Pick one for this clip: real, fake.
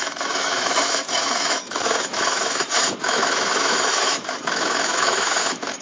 fake